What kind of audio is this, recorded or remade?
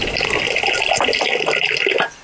recorded